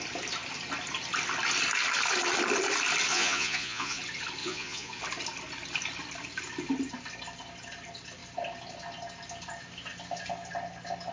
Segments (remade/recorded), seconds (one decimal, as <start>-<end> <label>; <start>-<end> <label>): 0.0-3.1 recorded; 3.1-4.0 remade; 4.0-4.4 recorded; 4.4-5.0 remade; 5.0-11.1 recorded